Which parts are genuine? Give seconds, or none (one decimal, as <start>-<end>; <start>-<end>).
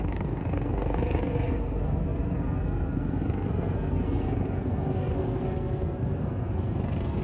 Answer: none